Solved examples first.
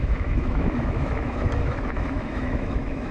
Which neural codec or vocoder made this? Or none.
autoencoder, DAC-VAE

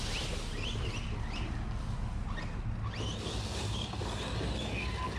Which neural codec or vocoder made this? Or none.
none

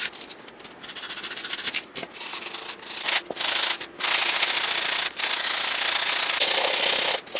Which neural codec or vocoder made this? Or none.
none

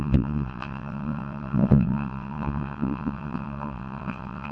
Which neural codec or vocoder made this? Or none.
vocoder, WaveNeXt